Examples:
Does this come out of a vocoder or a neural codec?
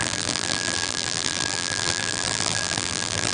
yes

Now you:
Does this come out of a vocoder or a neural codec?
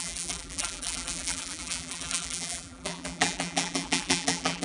yes